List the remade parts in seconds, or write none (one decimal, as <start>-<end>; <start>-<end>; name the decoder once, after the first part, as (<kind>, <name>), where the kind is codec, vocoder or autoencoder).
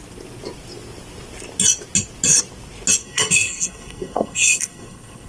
3.0-5.3 (codec, SNAC)